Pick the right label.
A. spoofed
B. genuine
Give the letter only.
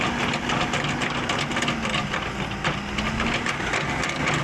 B